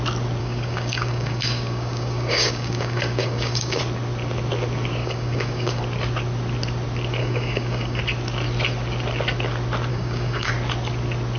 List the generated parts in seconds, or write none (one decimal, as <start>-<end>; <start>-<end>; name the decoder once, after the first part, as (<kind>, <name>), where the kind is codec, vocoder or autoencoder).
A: 0.4-3.8 (codec, DAC); 5.0-5.8; 7.2-8.0; 9.9-10.5